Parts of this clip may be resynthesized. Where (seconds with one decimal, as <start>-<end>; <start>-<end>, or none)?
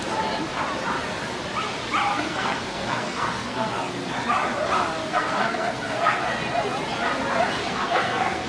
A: 2.1-3.9; 5.0-6.3; 7.6-8.5